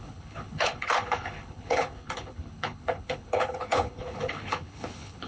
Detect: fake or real fake